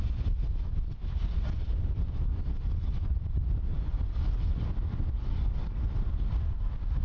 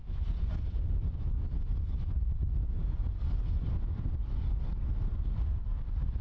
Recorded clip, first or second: second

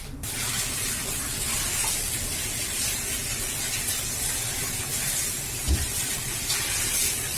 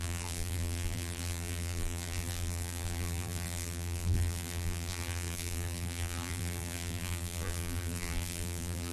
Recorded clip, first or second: first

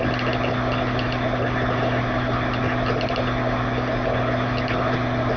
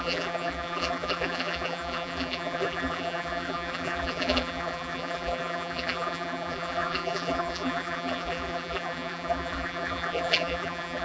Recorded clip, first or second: first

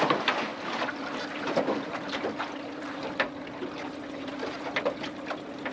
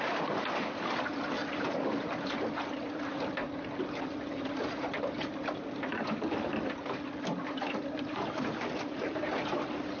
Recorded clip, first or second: first